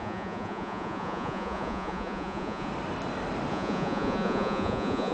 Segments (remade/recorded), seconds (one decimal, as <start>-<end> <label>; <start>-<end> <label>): 0.0-2.7 remade; 2.7-3.5 recorded; 3.5-5.1 remade